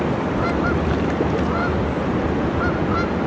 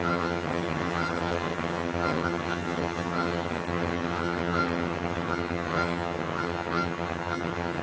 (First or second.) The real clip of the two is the first